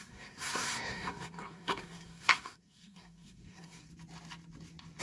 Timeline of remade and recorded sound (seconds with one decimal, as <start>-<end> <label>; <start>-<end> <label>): 0.0-3.9 remade; 3.9-5.0 recorded